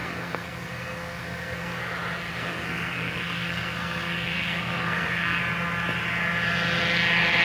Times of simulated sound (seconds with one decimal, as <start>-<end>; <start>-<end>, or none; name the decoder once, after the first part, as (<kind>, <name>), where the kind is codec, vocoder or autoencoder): 0.0-1.8 (codec, SNAC); 2.3-5.4